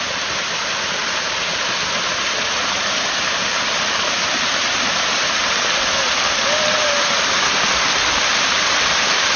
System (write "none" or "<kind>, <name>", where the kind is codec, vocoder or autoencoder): none